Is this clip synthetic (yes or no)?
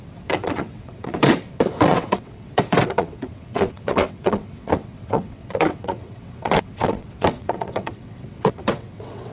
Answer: yes